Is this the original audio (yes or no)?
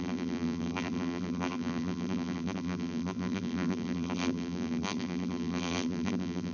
no